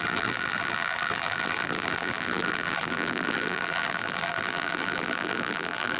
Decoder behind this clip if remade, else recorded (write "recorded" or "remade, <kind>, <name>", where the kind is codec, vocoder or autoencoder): remade, vocoder, BigVGAN v2